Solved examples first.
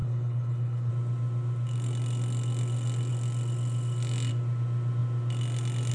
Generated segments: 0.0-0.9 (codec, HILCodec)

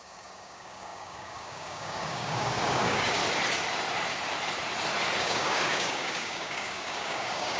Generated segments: 0.0-3.2 (codec, DAC); 5.2-7.6

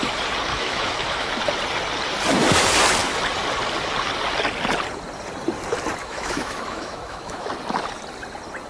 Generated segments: 0.5-1.3 (autoencoder, DAC-VAE); 6.0-7.5

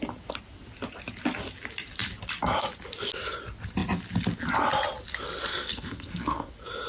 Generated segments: 5.5-6.5 (codec, SNAC)

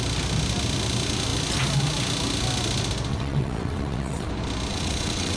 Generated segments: 3.1-4.3 (vocoder, WaveNeXt); 4.7-5.4